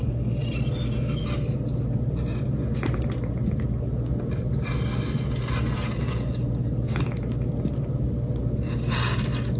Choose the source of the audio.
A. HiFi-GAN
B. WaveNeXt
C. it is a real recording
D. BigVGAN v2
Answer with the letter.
C